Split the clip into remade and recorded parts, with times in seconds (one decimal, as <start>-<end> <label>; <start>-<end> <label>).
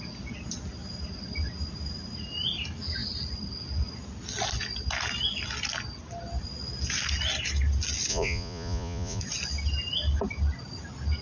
0.0-8.1 recorded; 8.1-9.2 remade; 9.2-11.2 recorded